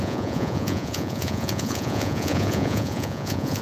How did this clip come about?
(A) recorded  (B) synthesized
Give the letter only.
B